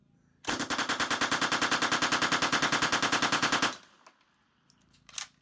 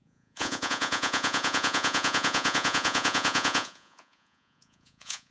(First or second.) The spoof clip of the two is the second